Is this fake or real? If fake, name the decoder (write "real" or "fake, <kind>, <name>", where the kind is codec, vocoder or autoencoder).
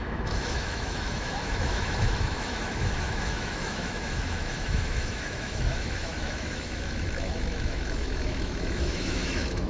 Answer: fake, autoencoder, DAC-VAE